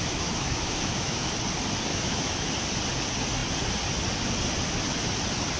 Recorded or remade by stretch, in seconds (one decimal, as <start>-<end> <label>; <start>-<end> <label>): 0.0-1.3 remade; 1.3-1.9 recorded; 1.9-2.5 remade; 2.5-5.6 recorded